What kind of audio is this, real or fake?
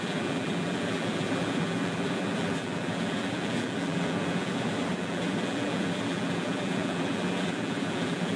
fake